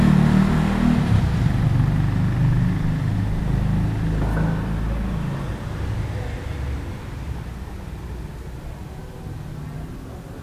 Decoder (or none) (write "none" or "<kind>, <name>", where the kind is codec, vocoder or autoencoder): none